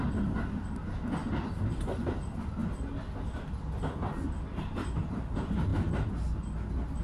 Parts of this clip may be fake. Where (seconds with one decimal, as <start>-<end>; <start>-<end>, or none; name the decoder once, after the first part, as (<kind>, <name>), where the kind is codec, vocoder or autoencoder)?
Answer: none

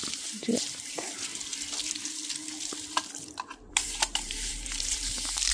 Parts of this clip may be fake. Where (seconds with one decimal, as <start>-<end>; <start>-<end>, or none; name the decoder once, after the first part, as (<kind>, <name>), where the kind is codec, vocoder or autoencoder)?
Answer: 0.0-1.3 (vocoder, BigVGAN v2); 3.7-5.5